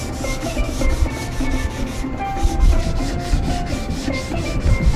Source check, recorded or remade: remade